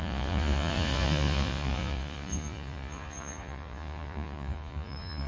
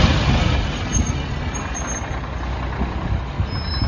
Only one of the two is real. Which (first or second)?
second